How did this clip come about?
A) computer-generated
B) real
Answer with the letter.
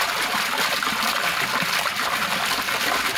B